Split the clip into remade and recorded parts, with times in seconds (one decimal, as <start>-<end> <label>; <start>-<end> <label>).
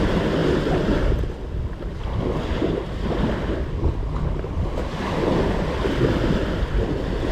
0.0-7.3 recorded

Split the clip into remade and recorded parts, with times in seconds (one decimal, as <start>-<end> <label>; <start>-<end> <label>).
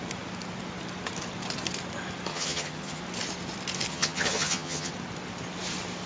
0.0-2.3 recorded; 2.3-3.0 remade; 3.0-3.9 recorded; 3.9-4.9 remade; 4.9-6.1 recorded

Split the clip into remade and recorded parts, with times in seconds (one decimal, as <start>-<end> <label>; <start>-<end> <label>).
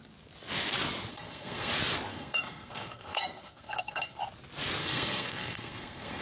0.0-1.1 recorded; 1.1-1.7 remade; 1.7-2.1 recorded; 2.1-4.2 remade; 4.2-4.8 recorded; 4.8-6.2 remade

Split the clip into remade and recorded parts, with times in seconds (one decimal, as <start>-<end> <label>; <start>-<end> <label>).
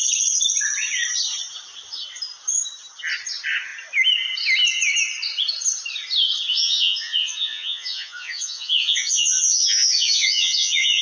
0.0-6.5 recorded; 6.5-11.0 remade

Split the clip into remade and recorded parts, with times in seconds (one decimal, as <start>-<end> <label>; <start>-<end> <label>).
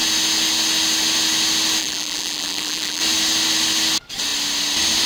0.0-1.8 recorded; 1.8-3.0 remade; 3.0-5.1 recorded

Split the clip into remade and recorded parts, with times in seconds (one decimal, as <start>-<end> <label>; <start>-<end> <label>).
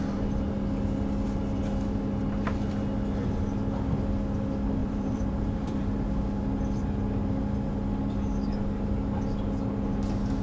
0.0-4.8 recorded; 4.8-5.8 remade; 5.8-10.4 recorded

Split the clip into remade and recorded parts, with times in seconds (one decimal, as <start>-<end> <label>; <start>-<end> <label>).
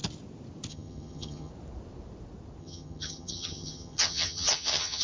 0.0-0.7 recorded; 0.7-1.5 remade; 1.5-2.6 recorded; 2.6-5.0 remade